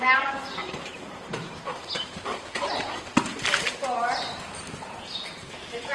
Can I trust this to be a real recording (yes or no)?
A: no